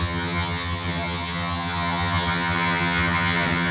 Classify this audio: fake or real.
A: fake